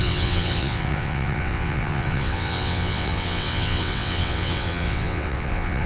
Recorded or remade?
remade